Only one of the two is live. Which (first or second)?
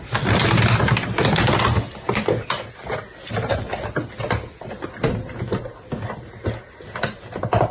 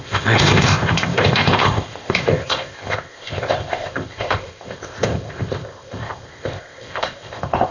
first